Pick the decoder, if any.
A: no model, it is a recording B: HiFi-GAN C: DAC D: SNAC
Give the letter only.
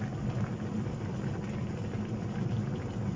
A